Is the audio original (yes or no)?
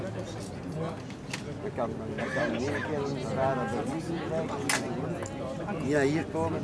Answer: yes